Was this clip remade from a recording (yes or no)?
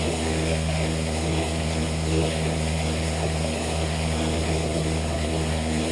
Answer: yes